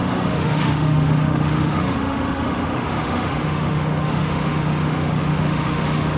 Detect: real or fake fake